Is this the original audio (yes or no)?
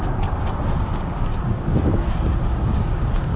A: no